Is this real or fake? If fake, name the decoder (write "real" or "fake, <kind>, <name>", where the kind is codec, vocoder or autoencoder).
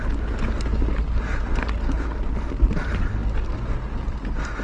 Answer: real